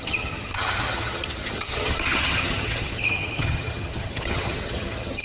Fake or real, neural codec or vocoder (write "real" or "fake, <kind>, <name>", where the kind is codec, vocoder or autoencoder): fake, vocoder, HiFi-GAN